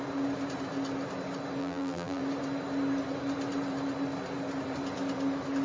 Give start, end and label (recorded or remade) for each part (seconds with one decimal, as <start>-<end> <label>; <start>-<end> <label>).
0.0-1.6 recorded; 1.6-2.2 remade; 2.2-5.6 recorded

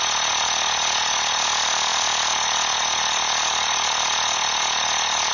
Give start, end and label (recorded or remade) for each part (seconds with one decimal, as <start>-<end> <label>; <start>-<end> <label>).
0.0-5.3 recorded

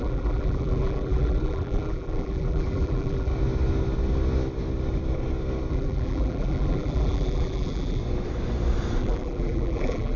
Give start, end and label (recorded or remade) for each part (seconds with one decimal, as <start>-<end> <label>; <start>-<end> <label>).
0.0-3.3 remade; 3.3-5.7 recorded; 5.7-8.0 remade; 8.0-9.0 recorded; 9.0-10.2 remade

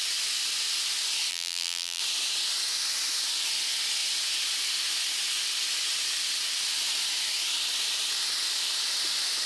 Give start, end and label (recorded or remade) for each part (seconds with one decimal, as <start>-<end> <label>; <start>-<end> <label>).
0.0-1.3 recorded; 1.3-2.0 remade; 2.0-9.5 recorded

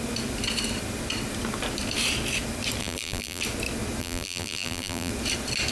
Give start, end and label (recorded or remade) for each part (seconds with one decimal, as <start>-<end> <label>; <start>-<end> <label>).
0.0-2.8 recorded; 2.8-3.4 remade; 3.4-4.0 recorded; 4.0-5.1 remade; 5.1-5.7 recorded

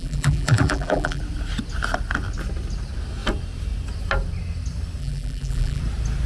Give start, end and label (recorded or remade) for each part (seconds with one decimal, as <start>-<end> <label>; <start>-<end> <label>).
0.0-1.2 remade; 1.2-5.0 recorded; 5.0-5.8 remade; 5.8-6.3 recorded